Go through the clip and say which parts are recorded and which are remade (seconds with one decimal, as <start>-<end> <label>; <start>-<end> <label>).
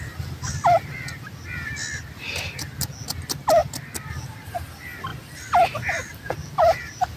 0.0-7.2 recorded